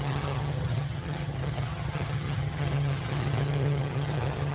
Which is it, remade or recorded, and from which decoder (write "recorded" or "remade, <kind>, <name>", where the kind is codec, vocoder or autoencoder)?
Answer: remade, vocoder, HiFi-GAN